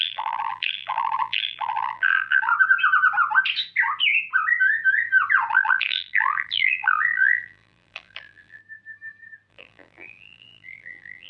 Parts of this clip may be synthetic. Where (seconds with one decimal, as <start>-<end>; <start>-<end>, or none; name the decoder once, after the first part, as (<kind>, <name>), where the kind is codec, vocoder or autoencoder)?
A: 0.0-2.5 (vocoder, BigVGAN v2); 5.5-8.6; 9.5-11.3